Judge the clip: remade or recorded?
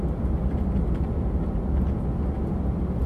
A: recorded